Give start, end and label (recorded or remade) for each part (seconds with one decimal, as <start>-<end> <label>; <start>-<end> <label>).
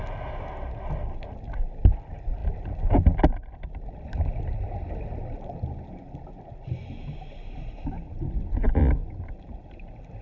0.0-9.0 recorded; 9.0-9.7 remade; 9.7-10.2 recorded